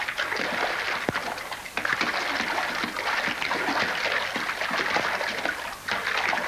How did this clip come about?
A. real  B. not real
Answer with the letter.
A